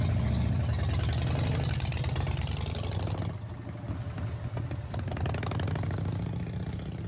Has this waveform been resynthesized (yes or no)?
no